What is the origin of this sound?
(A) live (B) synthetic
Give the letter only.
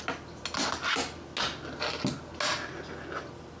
A